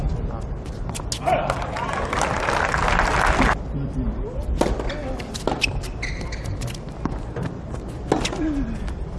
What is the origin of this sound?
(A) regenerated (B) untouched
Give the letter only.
B